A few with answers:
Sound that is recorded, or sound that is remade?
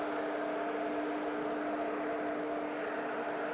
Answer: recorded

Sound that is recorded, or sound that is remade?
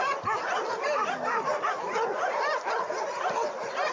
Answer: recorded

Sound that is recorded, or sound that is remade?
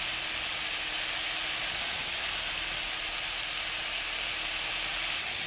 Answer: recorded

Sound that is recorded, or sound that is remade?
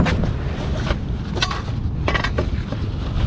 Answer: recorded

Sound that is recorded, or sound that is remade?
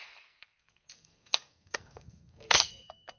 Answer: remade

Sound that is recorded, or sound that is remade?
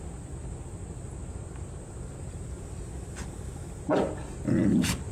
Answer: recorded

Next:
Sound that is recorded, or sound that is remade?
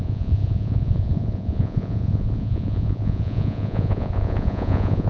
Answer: remade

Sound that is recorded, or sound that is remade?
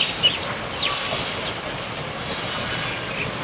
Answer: recorded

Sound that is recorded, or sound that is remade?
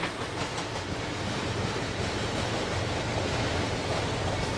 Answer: recorded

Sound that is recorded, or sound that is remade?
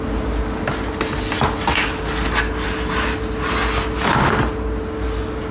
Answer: recorded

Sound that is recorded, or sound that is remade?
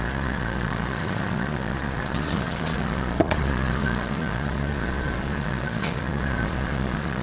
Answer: remade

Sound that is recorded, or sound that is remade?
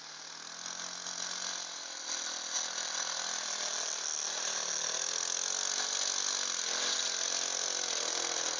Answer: recorded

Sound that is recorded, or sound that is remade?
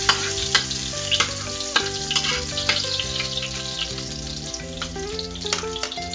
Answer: recorded